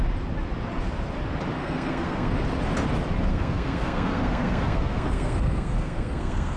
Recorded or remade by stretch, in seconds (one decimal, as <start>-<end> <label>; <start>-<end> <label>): 0.0-1.6 recorded; 1.6-2.3 remade; 2.3-3.3 recorded; 3.3-6.6 remade